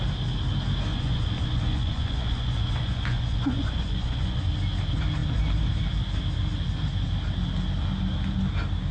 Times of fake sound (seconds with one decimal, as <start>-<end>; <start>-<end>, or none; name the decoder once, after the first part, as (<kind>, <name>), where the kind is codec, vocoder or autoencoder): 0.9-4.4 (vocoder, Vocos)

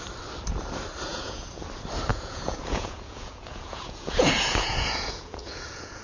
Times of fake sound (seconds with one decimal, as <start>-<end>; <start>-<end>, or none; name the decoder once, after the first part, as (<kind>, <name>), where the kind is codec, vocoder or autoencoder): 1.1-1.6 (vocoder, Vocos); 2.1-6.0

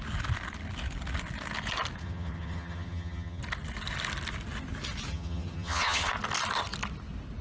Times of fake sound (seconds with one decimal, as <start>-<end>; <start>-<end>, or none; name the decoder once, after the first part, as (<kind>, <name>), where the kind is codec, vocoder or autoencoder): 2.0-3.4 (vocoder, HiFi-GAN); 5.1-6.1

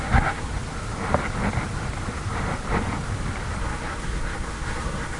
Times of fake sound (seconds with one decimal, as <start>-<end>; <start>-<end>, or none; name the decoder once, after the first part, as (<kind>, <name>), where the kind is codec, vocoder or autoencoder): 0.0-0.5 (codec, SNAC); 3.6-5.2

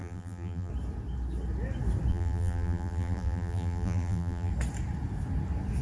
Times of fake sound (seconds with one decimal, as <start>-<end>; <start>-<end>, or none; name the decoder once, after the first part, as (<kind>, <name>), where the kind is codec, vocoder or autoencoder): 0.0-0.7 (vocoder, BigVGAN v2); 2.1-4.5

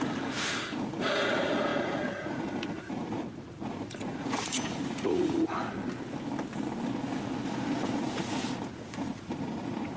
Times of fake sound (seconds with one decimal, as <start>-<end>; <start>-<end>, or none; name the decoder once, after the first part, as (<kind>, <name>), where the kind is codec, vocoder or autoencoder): 0.0-5.8 (vocoder, Vocos); 7.4-10.0

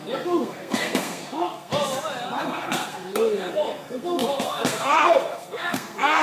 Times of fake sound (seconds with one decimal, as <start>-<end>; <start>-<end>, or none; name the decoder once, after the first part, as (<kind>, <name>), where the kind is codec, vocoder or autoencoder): 0.0-1.7 (codec, SNAC); 2.4-6.2

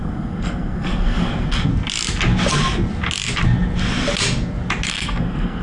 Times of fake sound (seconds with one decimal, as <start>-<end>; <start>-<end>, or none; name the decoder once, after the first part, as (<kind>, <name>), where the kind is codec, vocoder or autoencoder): 0.0-1.7 (codec, SNAC); 4.9-5.6